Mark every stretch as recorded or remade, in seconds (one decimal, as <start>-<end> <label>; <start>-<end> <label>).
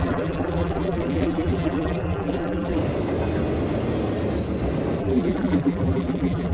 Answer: 0.0-2.8 remade; 2.8-5.0 recorded; 5.0-6.5 remade